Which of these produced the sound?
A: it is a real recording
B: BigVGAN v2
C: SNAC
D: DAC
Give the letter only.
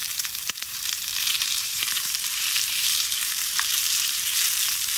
B